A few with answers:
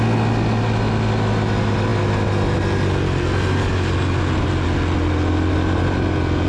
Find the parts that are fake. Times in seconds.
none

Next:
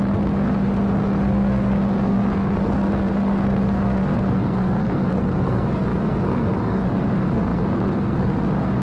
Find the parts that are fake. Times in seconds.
0.0-8.8 (codec, SNAC)